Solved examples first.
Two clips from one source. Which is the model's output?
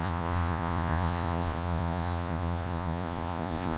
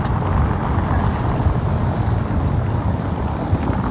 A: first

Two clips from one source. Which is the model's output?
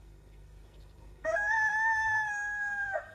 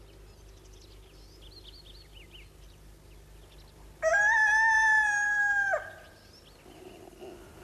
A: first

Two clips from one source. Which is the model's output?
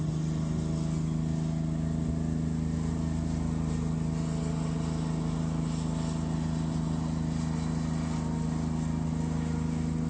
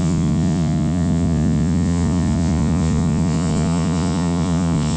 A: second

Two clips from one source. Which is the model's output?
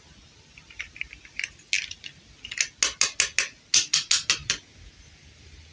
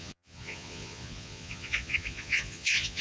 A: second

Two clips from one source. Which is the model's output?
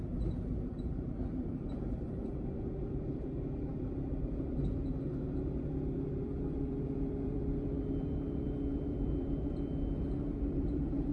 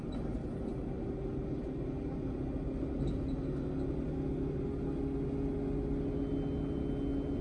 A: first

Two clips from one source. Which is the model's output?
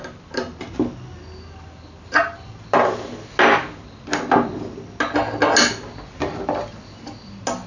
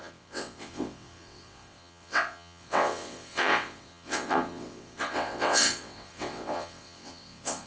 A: second